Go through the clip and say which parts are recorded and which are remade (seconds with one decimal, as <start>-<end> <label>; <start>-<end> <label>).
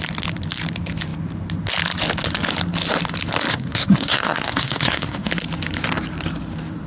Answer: 0.0-3.5 recorded; 3.5-5.3 remade; 5.3-6.9 recorded